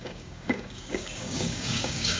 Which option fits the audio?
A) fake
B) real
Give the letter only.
A